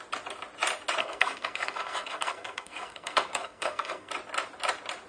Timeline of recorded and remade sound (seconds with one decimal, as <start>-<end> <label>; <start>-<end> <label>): 0.0-1.0 recorded; 1.0-4.1 remade; 4.1-5.1 recorded